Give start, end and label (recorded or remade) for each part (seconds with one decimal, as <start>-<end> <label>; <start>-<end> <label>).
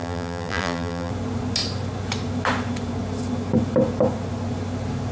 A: 0.0-1.1 remade; 1.1-5.1 recorded